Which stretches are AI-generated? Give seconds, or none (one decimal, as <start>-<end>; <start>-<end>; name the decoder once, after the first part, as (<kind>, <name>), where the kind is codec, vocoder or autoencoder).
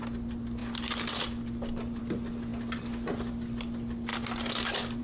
none